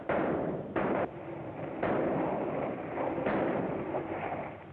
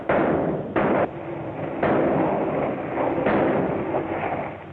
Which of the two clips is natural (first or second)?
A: second